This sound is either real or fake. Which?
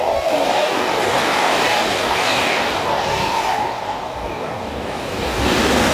fake